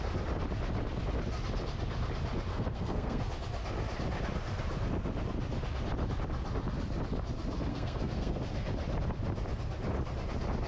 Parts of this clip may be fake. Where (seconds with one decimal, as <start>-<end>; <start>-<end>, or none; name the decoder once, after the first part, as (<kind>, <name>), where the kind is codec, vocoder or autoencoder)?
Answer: 2.5-3.2 (codec, SNAC); 7.7-8.4